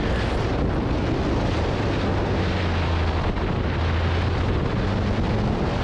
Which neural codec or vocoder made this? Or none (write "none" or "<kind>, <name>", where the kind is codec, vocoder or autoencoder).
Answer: none